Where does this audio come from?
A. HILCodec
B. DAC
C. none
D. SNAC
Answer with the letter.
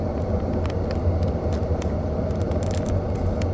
C